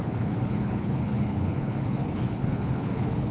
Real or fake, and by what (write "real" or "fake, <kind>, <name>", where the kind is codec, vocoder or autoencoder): fake, codec, HILCodec